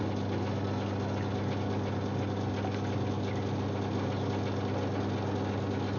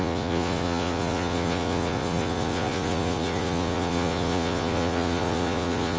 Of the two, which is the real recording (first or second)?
first